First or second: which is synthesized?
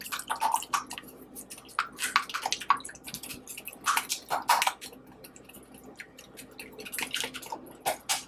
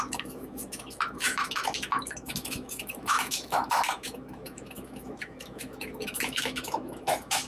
second